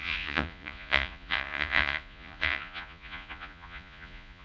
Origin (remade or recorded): remade